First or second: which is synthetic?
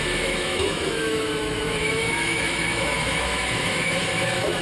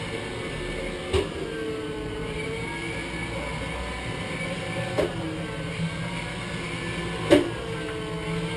first